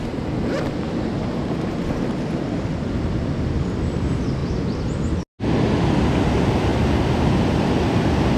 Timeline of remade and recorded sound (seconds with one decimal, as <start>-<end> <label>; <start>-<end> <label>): 0.0-8.4 recorded